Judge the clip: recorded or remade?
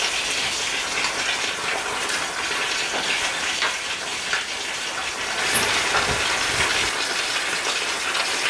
recorded